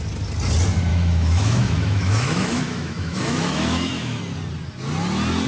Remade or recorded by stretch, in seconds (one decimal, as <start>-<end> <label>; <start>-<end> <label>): 0.0-0.9 recorded; 0.9-4.2 remade; 4.2-5.5 recorded